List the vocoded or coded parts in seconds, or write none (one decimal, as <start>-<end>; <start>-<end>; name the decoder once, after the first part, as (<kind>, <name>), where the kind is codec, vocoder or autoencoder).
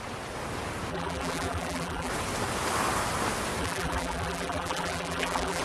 0.9-2.1 (vocoder, BigVGAN v2); 3.6-5.6